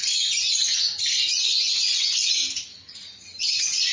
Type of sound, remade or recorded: recorded